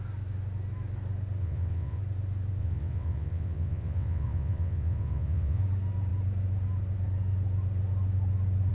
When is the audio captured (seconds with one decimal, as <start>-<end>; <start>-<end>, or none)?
0.0-1.4; 2.0-2.6; 5.6-8.7